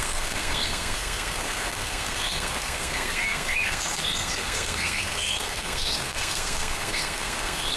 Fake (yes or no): yes